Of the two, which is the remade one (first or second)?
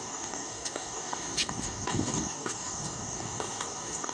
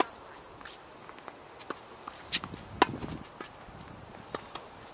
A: first